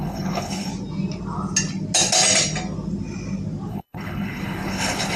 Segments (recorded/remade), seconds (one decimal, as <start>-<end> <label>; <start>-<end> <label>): 0.0-0.7 remade; 0.7-3.7 recorded; 3.7-5.2 remade